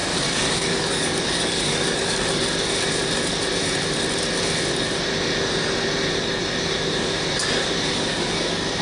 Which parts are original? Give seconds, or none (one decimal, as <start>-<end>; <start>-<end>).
2.4-8.1